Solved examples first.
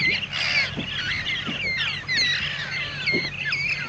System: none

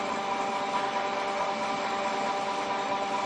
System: none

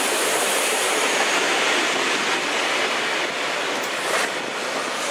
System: vocoder, BigVGAN v2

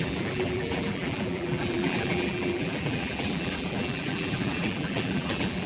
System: vocoder, BigVGAN v2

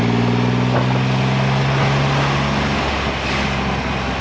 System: none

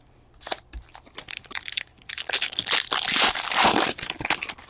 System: vocoder, BigVGAN v2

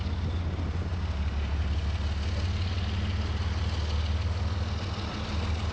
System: none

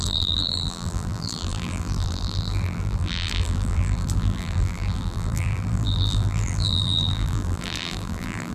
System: vocoder, BigVGAN v2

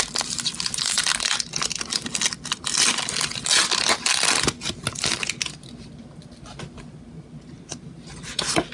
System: none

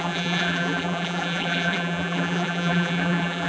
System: vocoder, BigVGAN v2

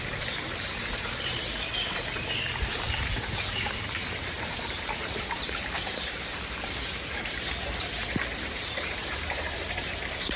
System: vocoder, BigVGAN v2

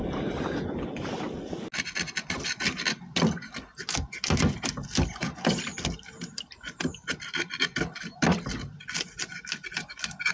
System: none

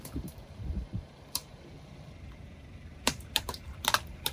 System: vocoder, BigVGAN v2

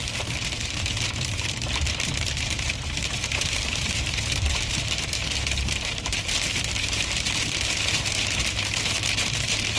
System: vocoder, BigVGAN v2